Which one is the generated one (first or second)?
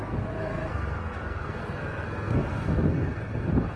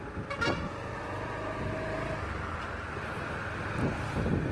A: first